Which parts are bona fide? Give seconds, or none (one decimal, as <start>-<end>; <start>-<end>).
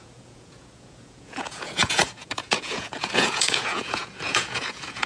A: none